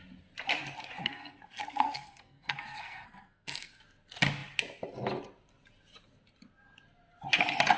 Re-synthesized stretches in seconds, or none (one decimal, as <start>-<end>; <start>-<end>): 1.0-3.8